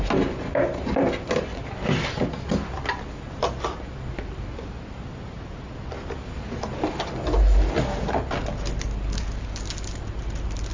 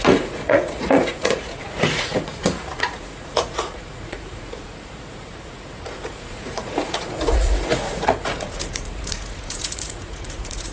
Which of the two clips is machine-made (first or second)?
second